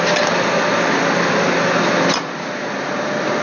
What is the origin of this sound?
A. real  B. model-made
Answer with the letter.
A